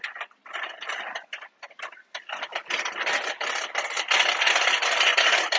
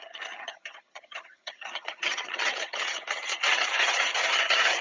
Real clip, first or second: first